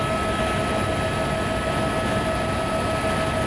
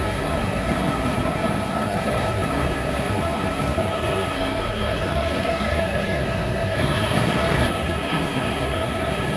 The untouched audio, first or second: first